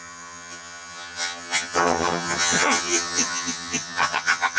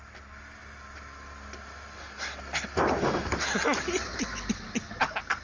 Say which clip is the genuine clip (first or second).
second